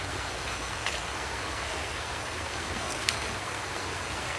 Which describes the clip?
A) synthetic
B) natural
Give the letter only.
A